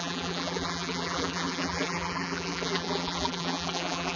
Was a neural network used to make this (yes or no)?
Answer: yes